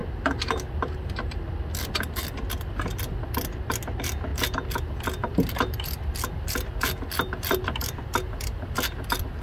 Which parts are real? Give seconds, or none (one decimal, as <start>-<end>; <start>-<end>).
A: 0.0-9.4